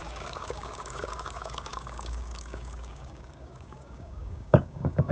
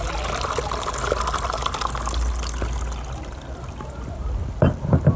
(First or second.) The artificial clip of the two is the first